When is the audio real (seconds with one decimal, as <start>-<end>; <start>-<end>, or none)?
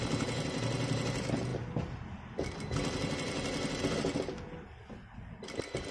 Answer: 0.0-5.9